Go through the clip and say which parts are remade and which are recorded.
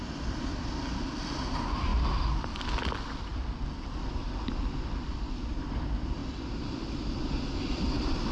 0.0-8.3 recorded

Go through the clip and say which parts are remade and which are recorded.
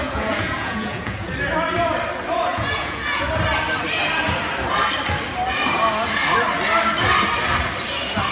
0.0-1.3 remade; 1.3-2.5 recorded; 2.5-3.3 remade; 3.3-8.3 recorded